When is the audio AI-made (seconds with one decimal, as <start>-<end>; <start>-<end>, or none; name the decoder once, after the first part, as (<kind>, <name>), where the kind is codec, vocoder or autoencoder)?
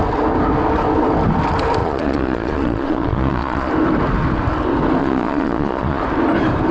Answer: 1.8-3.7 (vocoder, Vocos); 5.0-6.0